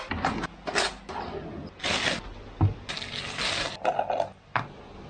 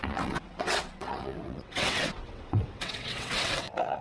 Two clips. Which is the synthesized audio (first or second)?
second